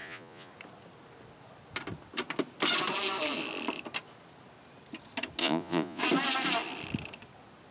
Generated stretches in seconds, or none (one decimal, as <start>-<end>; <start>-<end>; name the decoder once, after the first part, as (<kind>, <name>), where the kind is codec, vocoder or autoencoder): 0.0-0.5 (vocoder, Vocos); 5.4-6.0